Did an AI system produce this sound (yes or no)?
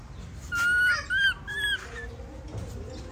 no